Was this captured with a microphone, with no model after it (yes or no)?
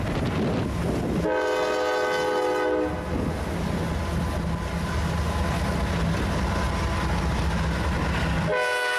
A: yes